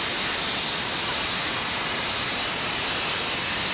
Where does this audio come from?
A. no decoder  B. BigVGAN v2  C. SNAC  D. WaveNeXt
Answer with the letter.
A